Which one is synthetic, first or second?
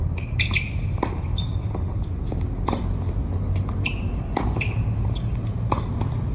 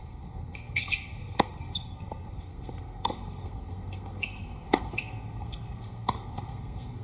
second